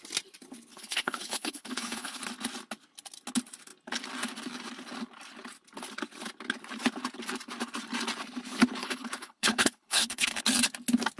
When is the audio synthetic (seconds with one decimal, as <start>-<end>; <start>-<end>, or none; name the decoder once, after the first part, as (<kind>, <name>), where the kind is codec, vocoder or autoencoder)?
0.7-2.2 (codec, HILCodec); 8.8-10.4